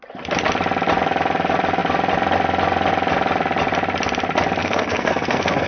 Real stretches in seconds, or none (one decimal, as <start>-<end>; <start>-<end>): 0.0-4.6